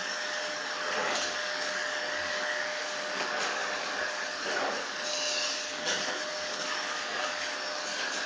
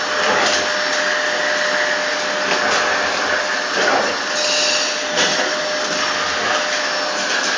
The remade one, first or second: first